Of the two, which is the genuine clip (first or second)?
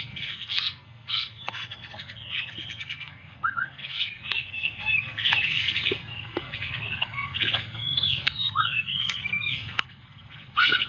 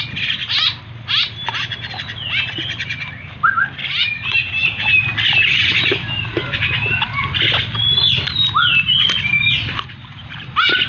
second